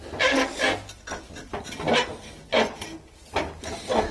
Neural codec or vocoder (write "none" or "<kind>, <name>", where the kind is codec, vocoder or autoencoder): none